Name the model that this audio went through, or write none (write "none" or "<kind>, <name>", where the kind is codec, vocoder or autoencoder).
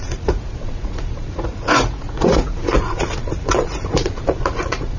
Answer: vocoder, Vocos